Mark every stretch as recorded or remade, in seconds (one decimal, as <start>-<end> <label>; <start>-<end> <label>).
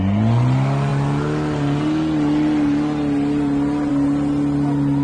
0.0-5.0 recorded